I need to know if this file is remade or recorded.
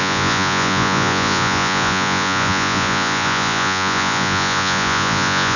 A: remade